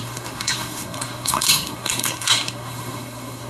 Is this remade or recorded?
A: remade